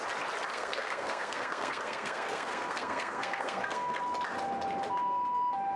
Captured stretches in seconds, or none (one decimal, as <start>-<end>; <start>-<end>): 0.0-0.5; 4.0-5.8